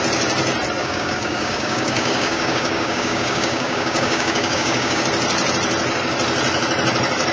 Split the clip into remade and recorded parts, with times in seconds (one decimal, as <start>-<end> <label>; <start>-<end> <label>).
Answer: 0.0-0.8 recorded; 0.8-5.0 remade; 5.0-7.3 recorded